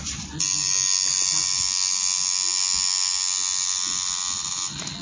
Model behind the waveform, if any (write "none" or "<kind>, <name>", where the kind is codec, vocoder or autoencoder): none